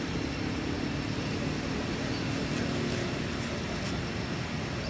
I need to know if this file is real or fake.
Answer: real